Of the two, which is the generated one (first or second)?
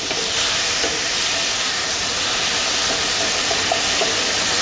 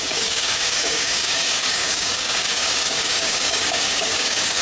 second